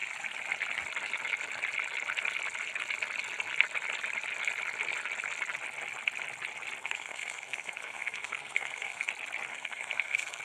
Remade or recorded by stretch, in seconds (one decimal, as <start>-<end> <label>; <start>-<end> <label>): 0.0-6.8 recorded; 6.8-9.1 remade; 9.1-9.5 recorded; 9.5-10.4 remade